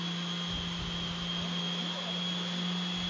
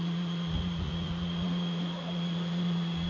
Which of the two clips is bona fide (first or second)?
first